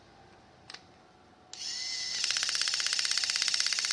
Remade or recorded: recorded